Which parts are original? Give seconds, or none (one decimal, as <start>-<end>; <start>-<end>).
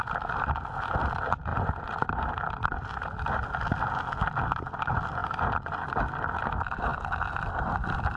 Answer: 0.0-8.2